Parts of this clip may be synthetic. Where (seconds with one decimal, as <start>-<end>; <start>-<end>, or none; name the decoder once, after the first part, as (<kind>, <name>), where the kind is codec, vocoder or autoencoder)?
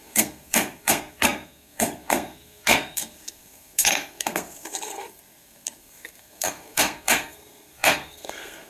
0.0-8.7 (codec, SNAC)